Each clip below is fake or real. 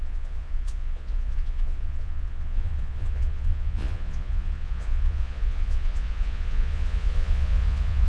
fake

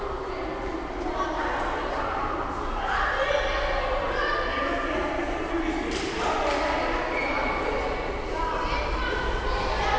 real